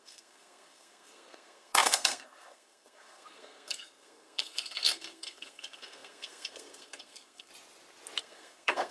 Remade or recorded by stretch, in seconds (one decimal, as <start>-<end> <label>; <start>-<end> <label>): 0.0-7.5 remade; 7.5-8.2 recorded; 8.2-8.9 remade